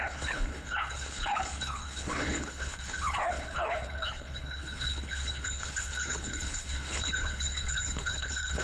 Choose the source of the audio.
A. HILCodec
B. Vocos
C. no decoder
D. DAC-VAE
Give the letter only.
A